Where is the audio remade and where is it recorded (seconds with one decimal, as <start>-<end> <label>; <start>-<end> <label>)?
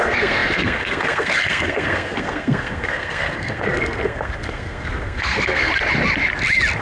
0.0-5.7 remade; 5.7-6.8 recorded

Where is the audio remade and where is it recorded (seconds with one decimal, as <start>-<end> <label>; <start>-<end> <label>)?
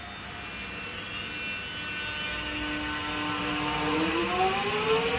0.0-5.2 recorded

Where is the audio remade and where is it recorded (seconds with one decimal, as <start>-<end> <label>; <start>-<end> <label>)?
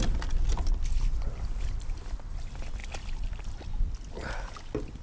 0.0-5.0 recorded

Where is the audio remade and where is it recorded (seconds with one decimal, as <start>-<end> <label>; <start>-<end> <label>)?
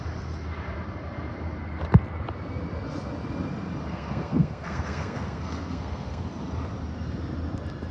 0.0-3.9 recorded; 3.9-6.3 remade; 6.3-7.9 recorded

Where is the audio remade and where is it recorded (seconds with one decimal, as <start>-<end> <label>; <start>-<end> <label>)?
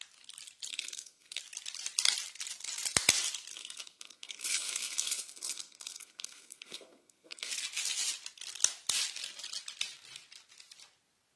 0.0-0.7 recorded; 0.7-1.4 remade; 1.4-3.5 recorded; 3.5-7.5 remade; 7.5-11.4 recorded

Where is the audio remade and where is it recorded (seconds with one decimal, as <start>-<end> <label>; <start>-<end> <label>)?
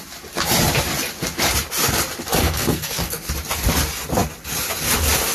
0.0-2.4 recorded; 2.4-3.3 remade; 3.3-5.3 recorded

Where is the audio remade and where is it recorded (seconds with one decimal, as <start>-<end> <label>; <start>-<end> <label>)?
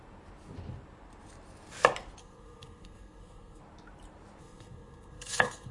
0.0-2.2 recorded; 2.2-3.6 remade; 3.6-4.4 recorded; 4.4-5.7 remade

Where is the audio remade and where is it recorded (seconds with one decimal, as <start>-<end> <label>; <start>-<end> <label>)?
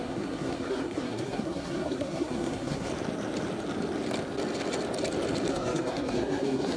0.0-2.9 remade; 2.9-5.5 recorded; 5.5-6.8 remade